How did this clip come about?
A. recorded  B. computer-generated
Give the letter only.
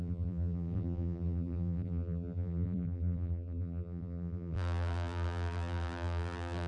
B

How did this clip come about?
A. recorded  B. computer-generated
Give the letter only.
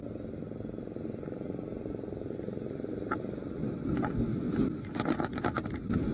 A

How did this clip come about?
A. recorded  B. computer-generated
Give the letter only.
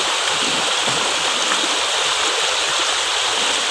A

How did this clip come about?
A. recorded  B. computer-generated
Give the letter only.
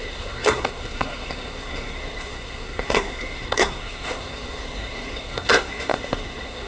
B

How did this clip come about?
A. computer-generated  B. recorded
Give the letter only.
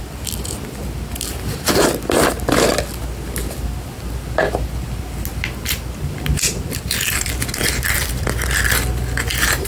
B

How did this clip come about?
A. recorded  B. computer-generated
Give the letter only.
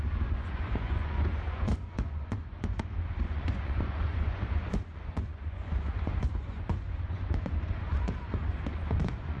B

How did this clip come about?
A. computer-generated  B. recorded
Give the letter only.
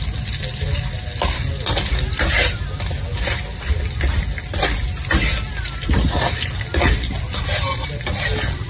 B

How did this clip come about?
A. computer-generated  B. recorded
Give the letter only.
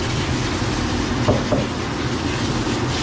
B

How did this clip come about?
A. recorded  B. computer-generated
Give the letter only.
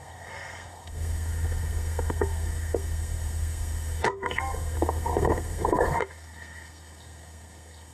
B